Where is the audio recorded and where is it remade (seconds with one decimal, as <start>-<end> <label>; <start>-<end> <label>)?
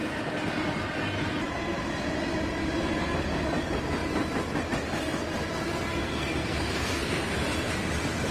0.0-6.0 recorded; 6.0-7.3 remade; 7.3-8.3 recorded